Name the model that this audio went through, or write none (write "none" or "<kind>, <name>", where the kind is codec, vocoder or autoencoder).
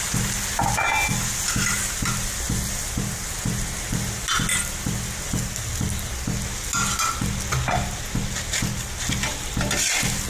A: none